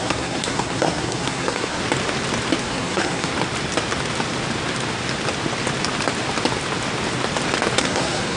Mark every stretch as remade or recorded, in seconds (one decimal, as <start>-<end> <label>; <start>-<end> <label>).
0.0-1.8 remade; 1.8-2.6 recorded; 2.6-3.3 remade; 3.3-7.8 recorded; 7.8-8.4 remade